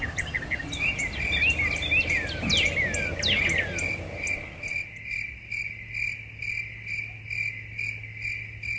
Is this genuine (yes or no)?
yes